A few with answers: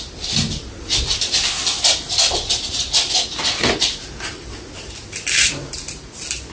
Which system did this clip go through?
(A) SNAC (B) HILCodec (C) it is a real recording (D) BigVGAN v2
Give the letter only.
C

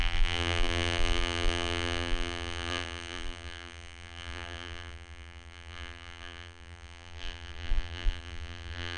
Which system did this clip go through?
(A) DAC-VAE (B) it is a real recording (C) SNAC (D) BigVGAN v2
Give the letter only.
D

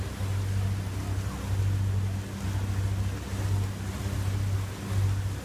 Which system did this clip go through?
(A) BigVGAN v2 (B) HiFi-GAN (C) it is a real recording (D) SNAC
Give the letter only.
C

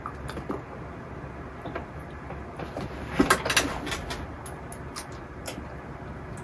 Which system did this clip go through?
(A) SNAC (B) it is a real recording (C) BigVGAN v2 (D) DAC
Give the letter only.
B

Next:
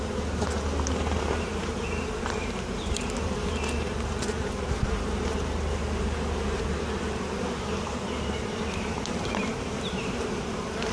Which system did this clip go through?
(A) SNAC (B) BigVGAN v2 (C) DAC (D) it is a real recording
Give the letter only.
B